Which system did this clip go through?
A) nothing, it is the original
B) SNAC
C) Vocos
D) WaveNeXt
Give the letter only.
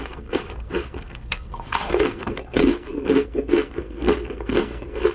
B